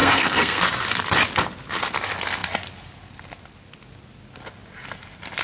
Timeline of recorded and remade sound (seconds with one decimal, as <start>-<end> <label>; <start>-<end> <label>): 0.0-0.6 remade; 0.6-5.4 recorded